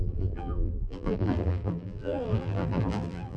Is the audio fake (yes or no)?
yes